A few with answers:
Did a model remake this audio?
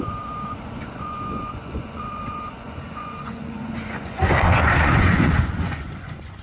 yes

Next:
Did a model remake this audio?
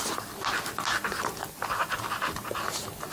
no